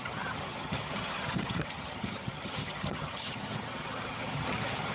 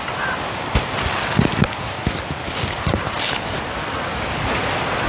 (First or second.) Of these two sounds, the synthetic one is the first